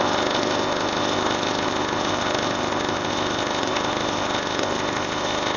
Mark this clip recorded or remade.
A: remade